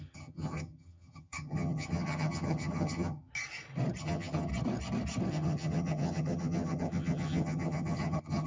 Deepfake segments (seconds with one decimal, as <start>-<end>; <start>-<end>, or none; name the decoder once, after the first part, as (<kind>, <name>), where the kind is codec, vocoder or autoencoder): 0.0-3.3 (vocoder, HiFi-GAN); 4.0-4.5; 5.3-8.5